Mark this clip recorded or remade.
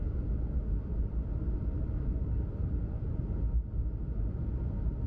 recorded